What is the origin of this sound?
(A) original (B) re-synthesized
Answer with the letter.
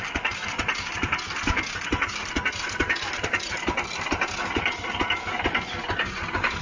A